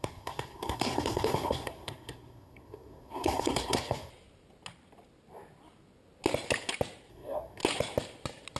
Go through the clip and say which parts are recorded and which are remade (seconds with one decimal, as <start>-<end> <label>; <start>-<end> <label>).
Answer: 0.0-4.1 remade; 4.1-7.1 recorded; 7.1-7.6 remade; 7.6-8.6 recorded